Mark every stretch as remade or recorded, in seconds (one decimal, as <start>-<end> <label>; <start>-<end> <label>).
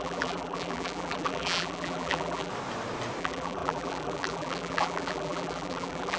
0.0-2.5 remade; 2.5-3.2 recorded; 3.2-6.2 remade